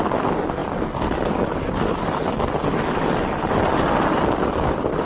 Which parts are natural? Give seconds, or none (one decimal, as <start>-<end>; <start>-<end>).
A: 0.0-5.0